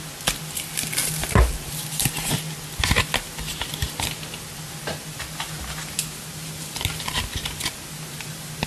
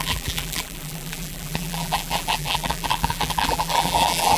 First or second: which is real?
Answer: first